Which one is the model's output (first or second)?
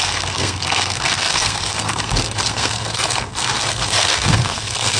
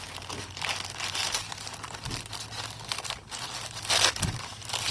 first